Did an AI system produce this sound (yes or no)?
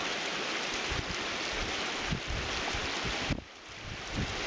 no